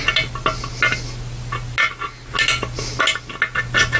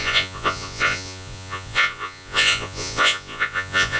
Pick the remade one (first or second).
second